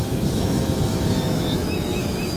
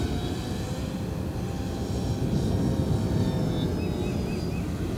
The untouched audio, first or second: second